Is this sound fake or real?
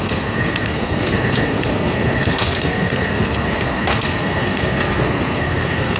fake